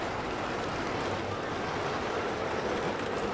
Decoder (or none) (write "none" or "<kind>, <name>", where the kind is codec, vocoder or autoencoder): none